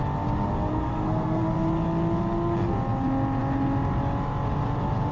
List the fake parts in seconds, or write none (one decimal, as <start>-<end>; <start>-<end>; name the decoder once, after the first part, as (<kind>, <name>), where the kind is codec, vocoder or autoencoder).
0.7-1.4 (codec, SNAC)